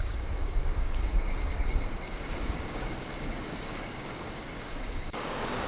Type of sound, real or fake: fake